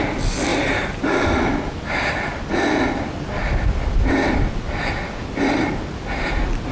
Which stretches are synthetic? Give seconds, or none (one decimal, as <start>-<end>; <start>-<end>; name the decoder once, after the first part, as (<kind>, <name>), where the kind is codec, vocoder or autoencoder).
none